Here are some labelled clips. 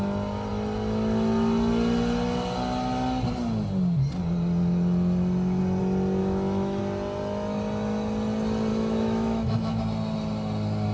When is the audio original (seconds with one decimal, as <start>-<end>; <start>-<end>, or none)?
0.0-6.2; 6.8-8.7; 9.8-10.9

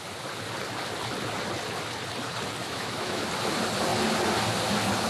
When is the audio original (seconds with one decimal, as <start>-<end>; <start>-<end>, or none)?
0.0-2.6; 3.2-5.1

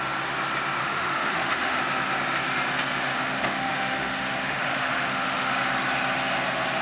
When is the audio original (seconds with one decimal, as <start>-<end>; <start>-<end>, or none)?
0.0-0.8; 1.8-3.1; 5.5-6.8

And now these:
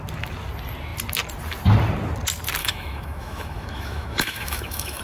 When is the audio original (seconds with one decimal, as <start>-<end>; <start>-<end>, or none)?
0.0-2.6

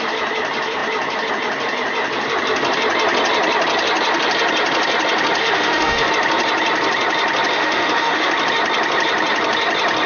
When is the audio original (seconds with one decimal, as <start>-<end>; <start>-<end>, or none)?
0.0-5.4; 6.1-7.5; 8.3-10.1